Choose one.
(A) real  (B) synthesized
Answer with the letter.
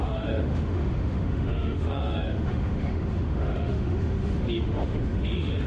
B